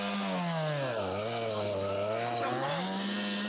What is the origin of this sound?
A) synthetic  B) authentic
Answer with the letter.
B